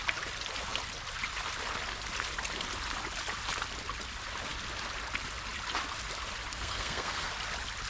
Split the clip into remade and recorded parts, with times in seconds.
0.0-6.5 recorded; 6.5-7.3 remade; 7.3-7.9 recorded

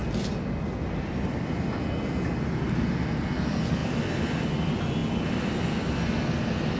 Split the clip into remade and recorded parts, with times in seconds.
0.0-6.8 recorded

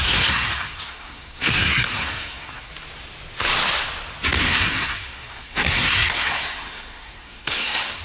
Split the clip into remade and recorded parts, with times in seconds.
0.0-2.7 remade; 2.7-4.4 recorded; 4.4-8.0 remade

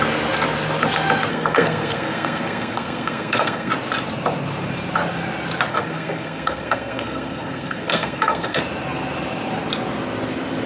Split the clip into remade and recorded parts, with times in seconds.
0.0-1.3 recorded; 1.3-3.7 remade; 3.7-5.7 recorded; 5.7-8.6 remade; 8.6-10.7 recorded